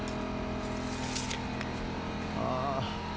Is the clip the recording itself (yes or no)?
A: yes